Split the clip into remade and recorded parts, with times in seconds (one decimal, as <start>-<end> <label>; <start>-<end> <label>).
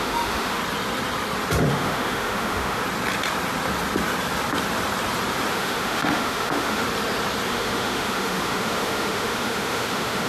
0.0-0.6 remade; 0.6-1.7 recorded; 1.7-2.8 remade; 2.8-5.5 recorded; 5.5-6.8 remade; 6.8-7.5 recorded; 7.5-10.3 remade